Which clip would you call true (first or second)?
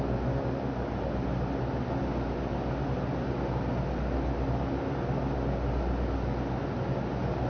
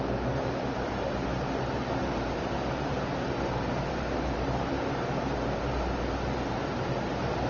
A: first